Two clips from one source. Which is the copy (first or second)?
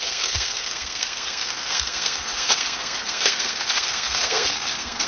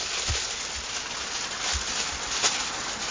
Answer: first